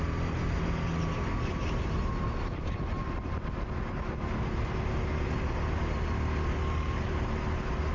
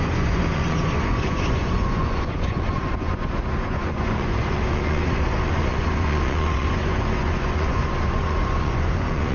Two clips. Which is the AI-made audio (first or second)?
second